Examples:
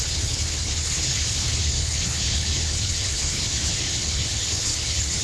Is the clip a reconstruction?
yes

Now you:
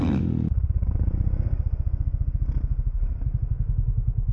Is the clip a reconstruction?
no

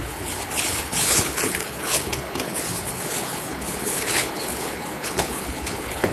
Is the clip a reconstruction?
yes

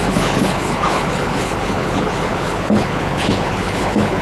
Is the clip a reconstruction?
yes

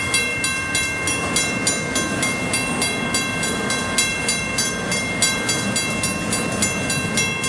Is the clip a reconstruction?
no